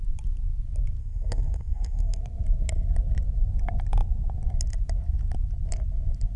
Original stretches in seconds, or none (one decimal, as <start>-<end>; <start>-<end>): 0.0-1.0; 2.2-6.4